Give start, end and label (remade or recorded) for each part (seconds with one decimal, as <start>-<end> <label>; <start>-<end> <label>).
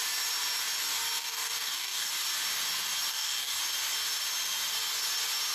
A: 0.0-1.2 recorded; 1.2-2.1 remade; 2.1-3.1 recorded; 3.1-3.6 remade; 3.6-5.5 recorded